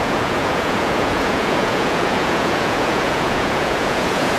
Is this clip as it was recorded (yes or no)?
no